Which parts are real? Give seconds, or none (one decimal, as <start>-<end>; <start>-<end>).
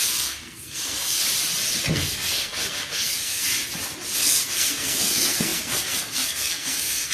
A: 1.2-1.9; 3.5-4.2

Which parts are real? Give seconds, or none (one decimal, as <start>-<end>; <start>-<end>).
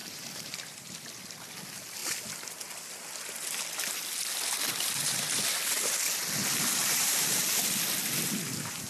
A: 1.1-6.8; 7.6-8.9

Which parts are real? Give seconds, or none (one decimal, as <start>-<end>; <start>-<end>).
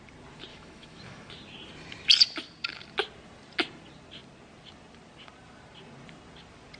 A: 0.0-0.5; 1.3-6.8